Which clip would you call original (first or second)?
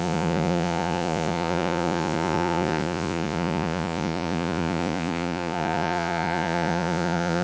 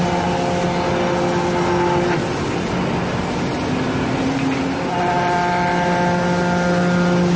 second